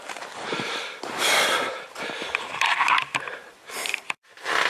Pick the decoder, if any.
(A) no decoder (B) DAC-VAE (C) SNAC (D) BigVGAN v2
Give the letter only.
D